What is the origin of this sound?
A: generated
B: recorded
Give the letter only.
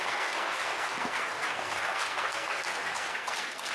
A